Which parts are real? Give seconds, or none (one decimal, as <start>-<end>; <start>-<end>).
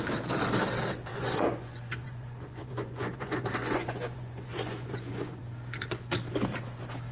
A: 0.0-1.1; 5.4-7.1